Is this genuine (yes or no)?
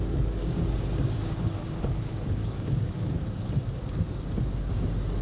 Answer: no